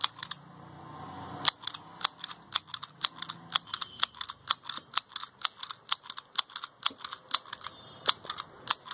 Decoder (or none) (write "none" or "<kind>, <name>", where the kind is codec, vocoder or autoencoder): none